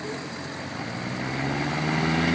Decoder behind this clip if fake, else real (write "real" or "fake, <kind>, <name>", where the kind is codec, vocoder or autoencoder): real